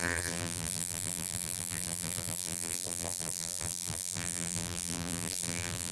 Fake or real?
fake